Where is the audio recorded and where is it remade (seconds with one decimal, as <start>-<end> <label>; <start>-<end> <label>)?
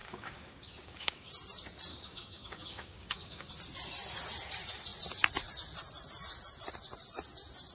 0.0-1.3 remade; 1.3-1.9 recorded; 1.9-3.5 remade; 3.5-7.7 recorded